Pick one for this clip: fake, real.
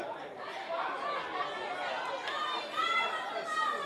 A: real